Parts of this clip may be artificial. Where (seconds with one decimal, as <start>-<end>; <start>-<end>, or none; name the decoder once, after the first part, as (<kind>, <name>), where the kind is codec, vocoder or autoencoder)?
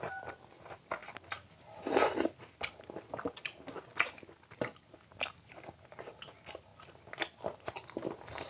none